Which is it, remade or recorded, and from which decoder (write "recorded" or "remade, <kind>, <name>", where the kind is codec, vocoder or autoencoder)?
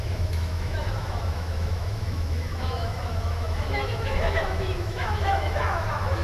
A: remade, autoencoder, DAC-VAE